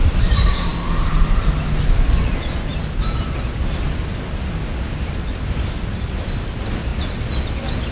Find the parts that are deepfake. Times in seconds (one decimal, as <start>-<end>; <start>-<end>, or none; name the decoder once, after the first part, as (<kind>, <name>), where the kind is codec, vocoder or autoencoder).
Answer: 0.0-2.7 (vocoder, BigVGAN v2); 3.3-4.4; 5.1-6.9